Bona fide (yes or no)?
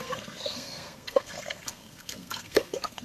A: no